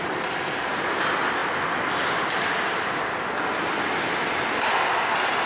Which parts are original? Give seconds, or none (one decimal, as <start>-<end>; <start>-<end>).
0.0-5.5